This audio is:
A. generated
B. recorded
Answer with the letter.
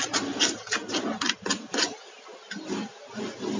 B